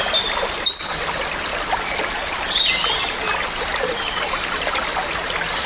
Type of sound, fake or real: real